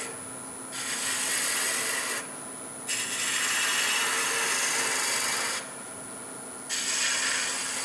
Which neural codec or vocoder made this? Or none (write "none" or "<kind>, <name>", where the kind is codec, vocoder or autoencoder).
none